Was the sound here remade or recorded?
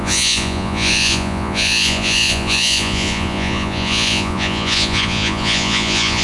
remade